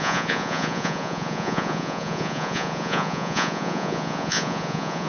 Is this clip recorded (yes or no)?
no